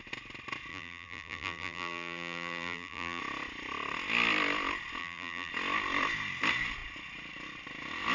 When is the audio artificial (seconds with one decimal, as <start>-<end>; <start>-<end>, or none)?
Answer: 0.7-3.2; 5.0-5.5